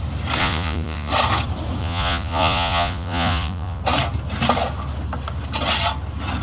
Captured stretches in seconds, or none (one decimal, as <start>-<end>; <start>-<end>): 0.0-0.4; 1.1-1.8; 3.8-6.4